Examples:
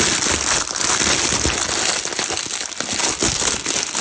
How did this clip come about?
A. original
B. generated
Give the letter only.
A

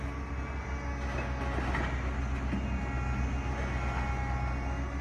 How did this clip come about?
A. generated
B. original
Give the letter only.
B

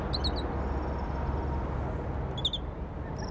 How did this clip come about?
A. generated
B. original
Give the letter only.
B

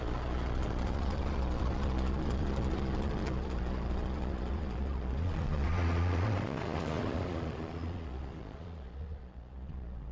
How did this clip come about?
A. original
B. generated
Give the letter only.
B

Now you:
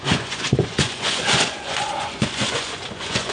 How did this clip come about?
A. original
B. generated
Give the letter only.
B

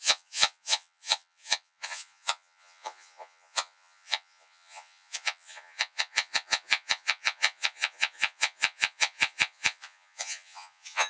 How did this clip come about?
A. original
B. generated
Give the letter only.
B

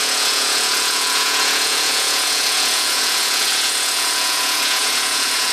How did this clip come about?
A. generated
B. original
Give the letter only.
A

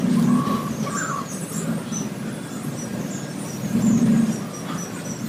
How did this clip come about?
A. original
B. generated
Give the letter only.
A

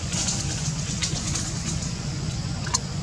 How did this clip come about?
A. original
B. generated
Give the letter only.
B